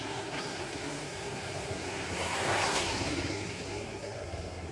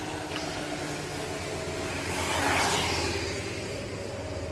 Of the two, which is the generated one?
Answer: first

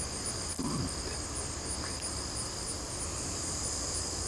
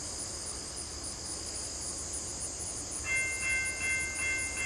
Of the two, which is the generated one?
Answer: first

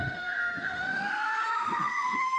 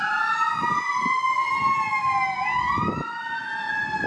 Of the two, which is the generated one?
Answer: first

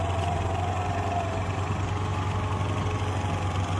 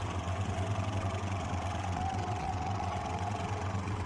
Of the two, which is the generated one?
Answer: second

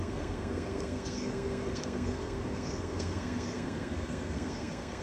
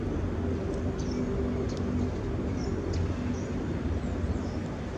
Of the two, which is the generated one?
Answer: first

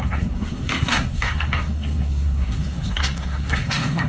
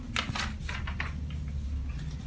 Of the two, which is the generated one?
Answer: first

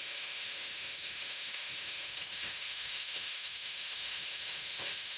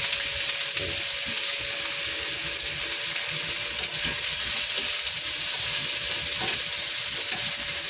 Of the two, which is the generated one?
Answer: first